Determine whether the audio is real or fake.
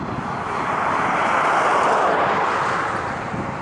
real